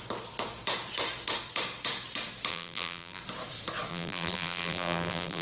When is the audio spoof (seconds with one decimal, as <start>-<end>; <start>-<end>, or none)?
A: 2.5-3.2; 3.9-5.4